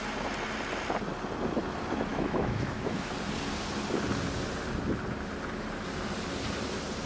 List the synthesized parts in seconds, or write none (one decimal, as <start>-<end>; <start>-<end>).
2.1-3.1